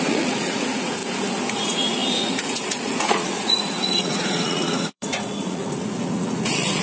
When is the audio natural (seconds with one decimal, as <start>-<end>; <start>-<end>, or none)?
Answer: 1.0-1.5